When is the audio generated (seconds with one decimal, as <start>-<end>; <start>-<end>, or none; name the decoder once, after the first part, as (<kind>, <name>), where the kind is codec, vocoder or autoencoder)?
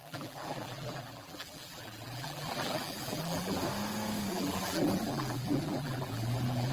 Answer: 0.0-3.6 (vocoder, BigVGAN v2); 4.3-6.7